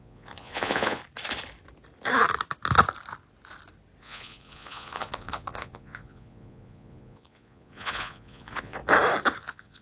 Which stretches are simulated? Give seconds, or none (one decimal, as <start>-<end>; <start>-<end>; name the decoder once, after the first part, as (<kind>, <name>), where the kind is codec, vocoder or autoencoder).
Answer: 0.0-1.0 (vocoder, Vocos); 4.0-8.8; 9.4-9.8